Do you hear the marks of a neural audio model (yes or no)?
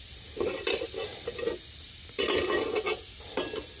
no